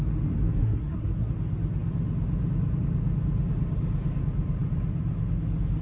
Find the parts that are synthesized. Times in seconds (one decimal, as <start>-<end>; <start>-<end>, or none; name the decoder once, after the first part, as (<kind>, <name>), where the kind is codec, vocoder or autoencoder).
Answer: 0.6-1.3 (codec, SNAC)

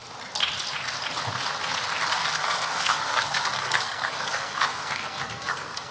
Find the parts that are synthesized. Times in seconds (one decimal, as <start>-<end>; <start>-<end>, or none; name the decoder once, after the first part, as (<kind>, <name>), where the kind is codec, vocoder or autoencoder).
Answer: 2.2-5.9 (codec, SNAC)

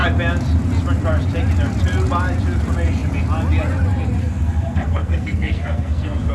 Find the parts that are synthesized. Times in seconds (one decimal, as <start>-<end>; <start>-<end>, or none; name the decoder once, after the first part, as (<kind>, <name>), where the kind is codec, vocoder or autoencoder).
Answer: 4.2-6.3 (codec, SNAC)